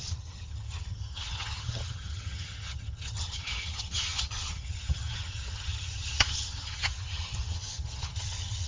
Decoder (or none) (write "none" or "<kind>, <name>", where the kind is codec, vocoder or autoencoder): vocoder, HiFi-GAN